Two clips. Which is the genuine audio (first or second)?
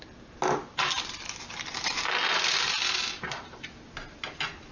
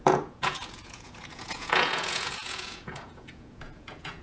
first